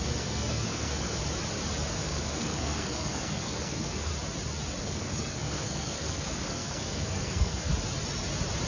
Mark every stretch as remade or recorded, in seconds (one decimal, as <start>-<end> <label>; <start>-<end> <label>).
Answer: 0.0-1.2 remade; 1.2-1.9 recorded; 1.9-4.1 remade; 4.1-4.8 recorded; 4.8-7.7 remade; 7.7-8.7 recorded